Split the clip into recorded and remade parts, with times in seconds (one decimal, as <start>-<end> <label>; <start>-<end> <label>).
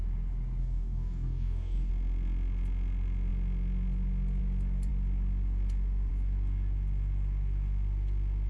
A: 0.0-0.6 recorded; 0.6-1.9 remade; 1.9-8.5 recorded